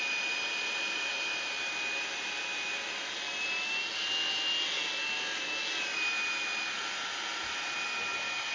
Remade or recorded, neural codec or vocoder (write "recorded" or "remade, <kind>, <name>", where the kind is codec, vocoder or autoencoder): recorded